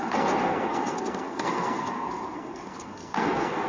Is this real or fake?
fake